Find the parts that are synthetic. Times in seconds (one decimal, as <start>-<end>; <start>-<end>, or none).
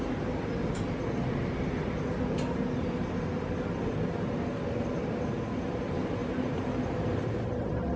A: 6.2-8.0